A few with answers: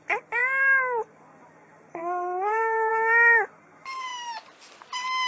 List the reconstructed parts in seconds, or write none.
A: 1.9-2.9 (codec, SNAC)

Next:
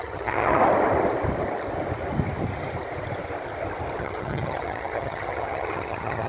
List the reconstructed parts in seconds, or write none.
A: 0.0-0.6 (vocoder, HiFi-GAN); 4.0-6.3